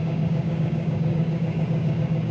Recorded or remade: remade